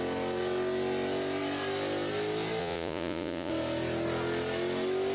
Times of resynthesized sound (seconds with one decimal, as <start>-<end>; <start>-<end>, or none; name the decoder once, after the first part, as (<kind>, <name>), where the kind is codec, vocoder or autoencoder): 2.6-3.5 (vocoder, Vocos)